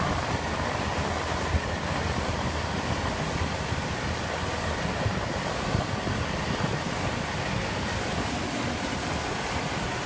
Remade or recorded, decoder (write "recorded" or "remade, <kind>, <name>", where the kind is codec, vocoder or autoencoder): recorded